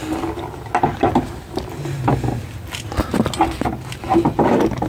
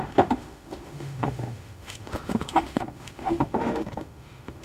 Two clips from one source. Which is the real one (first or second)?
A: first